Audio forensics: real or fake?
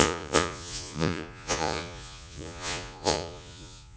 fake